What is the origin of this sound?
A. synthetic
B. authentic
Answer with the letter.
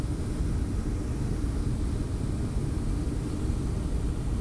B